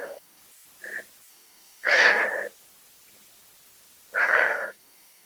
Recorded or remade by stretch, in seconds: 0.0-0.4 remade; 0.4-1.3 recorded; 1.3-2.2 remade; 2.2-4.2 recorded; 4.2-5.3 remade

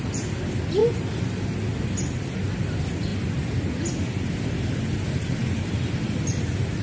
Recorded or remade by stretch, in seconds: 0.0-6.8 recorded

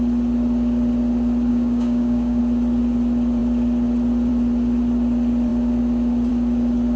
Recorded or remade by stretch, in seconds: 0.0-1.5 recorded; 1.5-2.4 remade; 2.4-7.0 recorded